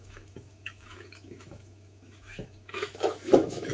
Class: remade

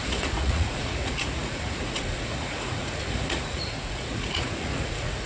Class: remade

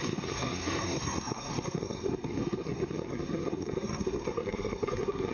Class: remade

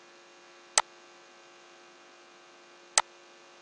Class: recorded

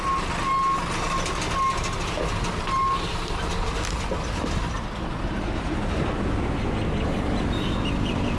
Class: recorded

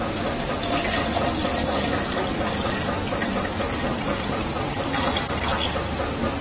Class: recorded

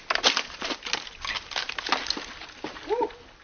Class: recorded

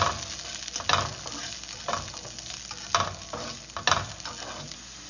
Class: recorded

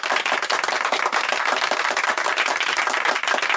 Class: recorded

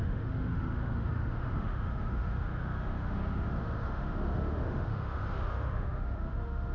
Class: remade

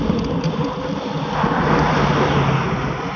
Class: recorded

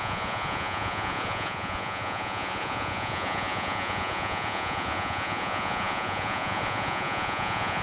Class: remade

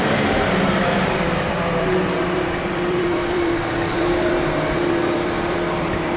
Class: remade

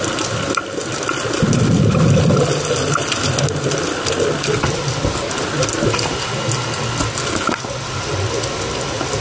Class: recorded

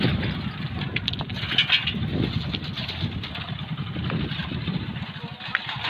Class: recorded